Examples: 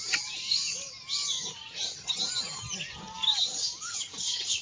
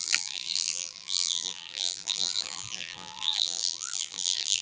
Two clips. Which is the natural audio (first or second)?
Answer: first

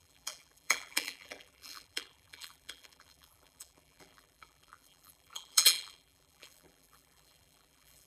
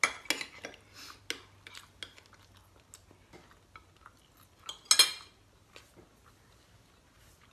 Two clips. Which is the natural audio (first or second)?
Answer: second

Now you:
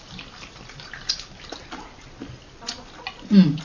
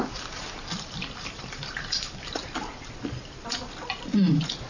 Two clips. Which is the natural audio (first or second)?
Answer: first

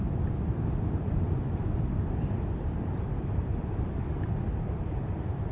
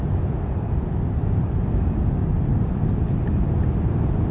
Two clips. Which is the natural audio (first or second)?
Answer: second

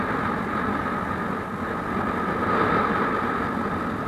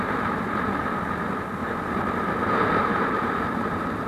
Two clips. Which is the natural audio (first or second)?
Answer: first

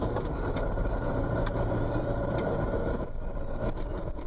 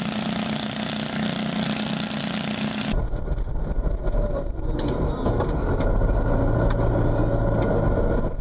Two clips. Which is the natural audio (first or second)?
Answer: second